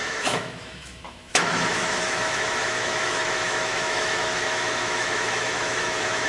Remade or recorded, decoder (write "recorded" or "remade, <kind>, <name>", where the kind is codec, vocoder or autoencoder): remade, autoencoder, DAC-VAE